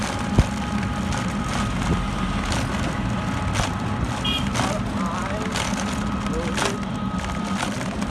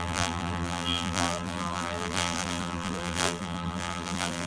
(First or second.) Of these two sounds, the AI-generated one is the second